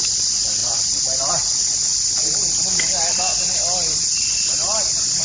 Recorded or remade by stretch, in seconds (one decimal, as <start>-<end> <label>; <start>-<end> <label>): 0.0-5.2 recorded